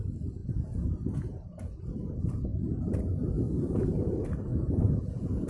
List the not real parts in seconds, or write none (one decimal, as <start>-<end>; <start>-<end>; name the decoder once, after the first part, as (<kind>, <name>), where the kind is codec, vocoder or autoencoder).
0.4-1.8 (vocoder, Vocos); 4.5-5.5

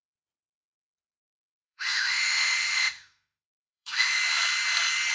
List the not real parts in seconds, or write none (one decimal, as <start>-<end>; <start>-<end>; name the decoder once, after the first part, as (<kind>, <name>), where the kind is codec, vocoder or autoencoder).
1.2-4.2 (autoencoder, DAC-VAE)